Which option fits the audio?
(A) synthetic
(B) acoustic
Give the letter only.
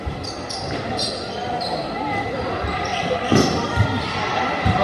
A